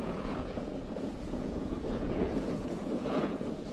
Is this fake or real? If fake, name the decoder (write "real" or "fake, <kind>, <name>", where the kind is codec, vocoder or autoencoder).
fake, vocoder, Vocos